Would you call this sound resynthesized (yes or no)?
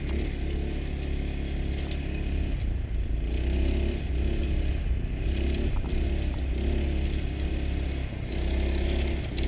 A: no